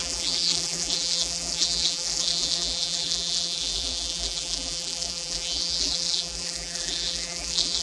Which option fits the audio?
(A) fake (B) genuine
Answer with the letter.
A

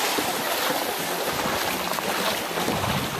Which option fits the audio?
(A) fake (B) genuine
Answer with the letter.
B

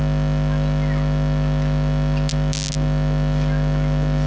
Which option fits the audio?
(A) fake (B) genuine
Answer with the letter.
B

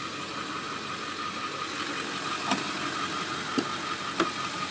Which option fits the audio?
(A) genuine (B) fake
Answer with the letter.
A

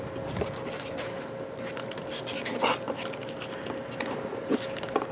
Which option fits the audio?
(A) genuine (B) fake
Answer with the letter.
A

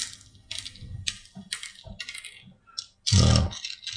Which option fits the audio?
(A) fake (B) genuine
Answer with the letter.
B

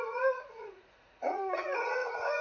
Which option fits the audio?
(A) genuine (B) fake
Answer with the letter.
B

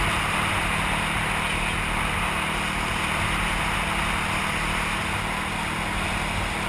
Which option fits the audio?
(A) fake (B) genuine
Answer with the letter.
B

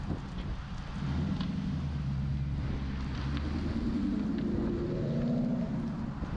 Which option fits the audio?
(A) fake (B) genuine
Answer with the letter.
B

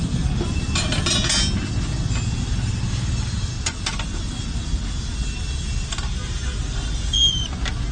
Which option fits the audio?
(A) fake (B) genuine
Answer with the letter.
B